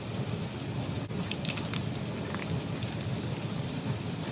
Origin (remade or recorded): recorded